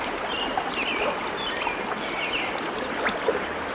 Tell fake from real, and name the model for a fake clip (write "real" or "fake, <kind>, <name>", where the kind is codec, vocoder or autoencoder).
real